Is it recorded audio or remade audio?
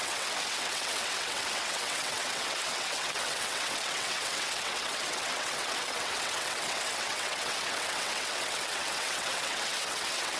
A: remade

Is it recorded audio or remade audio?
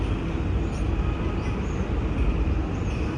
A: recorded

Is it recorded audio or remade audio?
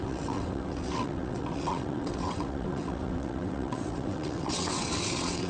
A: remade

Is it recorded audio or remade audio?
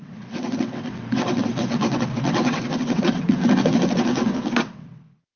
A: remade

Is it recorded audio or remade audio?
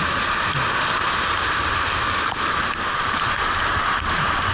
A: recorded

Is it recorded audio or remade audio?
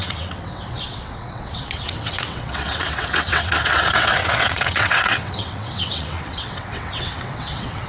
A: remade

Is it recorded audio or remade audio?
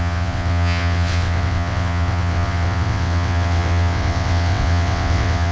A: remade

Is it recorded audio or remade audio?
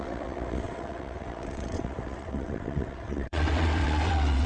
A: remade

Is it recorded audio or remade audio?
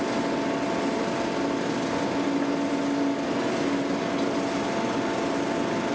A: recorded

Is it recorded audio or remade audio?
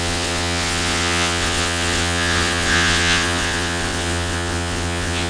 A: remade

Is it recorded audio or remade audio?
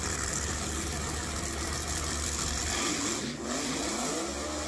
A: recorded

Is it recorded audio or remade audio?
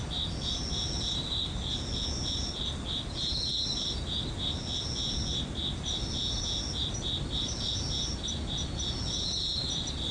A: recorded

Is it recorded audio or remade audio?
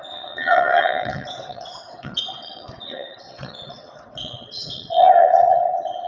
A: remade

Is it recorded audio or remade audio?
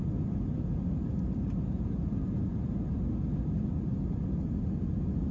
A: recorded